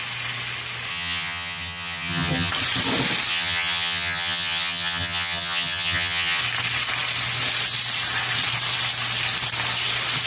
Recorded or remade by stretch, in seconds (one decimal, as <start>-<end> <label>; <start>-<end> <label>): 0.0-0.9 recorded; 0.9-2.5 remade; 2.5-3.3 recorded; 3.3-6.4 remade; 6.4-10.3 recorded